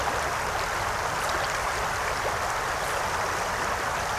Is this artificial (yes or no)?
no